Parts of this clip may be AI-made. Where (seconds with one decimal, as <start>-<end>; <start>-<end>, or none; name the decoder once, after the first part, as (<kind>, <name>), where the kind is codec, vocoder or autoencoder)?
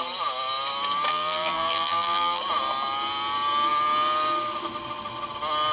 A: 1.1-2.4 (vocoder, BigVGAN v2)